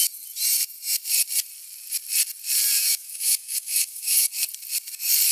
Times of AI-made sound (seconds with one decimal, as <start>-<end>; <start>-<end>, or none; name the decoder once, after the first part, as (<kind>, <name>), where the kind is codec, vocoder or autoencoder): 2.8-4.3 (autoencoder, DAC-VAE)